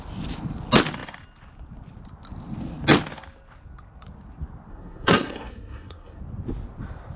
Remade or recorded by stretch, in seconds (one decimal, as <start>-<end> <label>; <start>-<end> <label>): 0.0-4.7 recorded; 4.7-6.2 remade; 6.2-7.2 recorded